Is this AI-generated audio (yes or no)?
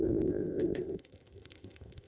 yes